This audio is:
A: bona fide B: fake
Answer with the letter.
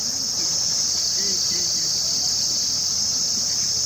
A